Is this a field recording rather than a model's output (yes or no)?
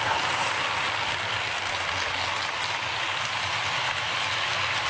yes